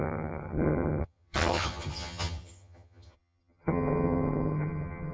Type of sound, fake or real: fake